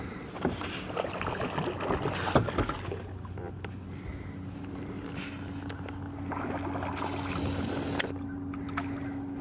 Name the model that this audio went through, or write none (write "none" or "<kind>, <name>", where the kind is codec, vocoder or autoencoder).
none